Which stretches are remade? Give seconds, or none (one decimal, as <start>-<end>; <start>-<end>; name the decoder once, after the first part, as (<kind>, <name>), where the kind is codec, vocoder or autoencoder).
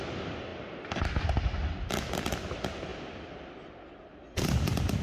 none